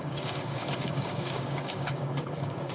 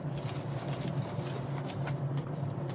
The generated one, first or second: first